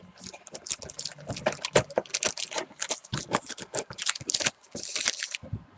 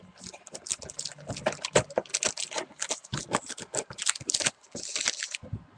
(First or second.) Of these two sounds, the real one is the second